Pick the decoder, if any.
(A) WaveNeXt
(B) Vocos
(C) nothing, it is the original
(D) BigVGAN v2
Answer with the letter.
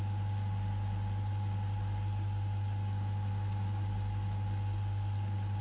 C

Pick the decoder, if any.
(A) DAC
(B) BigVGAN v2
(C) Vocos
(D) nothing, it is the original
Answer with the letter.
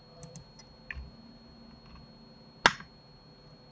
D